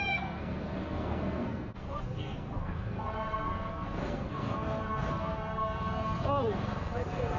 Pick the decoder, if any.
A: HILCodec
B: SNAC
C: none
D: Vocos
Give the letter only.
B